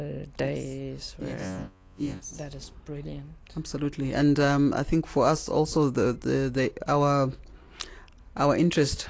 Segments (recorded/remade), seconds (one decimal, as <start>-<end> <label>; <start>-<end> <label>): 0.0-1.4 recorded; 1.4-2.2 remade; 2.2-9.1 recorded